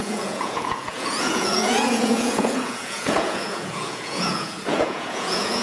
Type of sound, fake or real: fake